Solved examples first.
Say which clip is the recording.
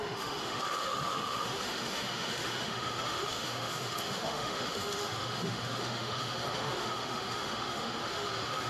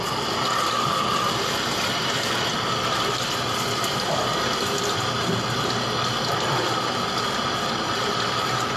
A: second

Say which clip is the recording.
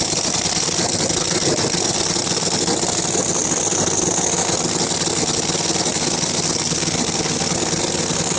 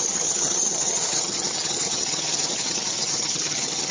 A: first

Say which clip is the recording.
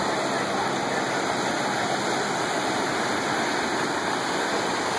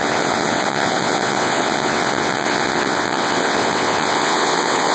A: first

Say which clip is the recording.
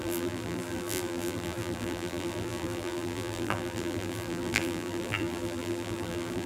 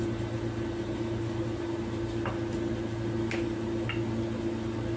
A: second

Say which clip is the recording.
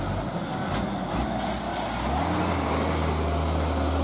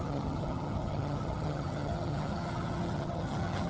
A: first